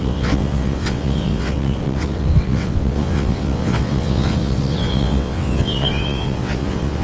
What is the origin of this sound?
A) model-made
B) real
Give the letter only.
A